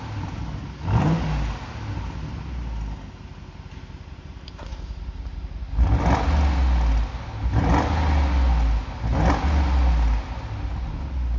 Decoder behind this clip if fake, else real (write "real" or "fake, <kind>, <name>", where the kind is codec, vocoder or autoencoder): real